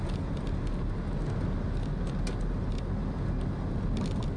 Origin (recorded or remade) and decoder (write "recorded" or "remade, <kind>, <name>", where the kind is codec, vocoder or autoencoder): recorded